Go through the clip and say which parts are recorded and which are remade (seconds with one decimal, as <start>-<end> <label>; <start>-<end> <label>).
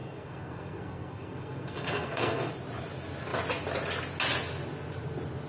0.0-2.5 remade; 2.5-5.5 recorded